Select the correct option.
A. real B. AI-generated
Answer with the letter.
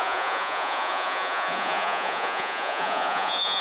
B